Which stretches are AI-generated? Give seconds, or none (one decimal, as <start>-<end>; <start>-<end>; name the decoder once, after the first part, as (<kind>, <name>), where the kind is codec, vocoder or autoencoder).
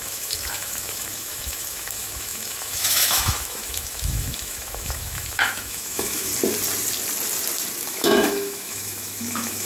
0.0-6.3 (autoencoder, DAC-VAE); 7.9-9.7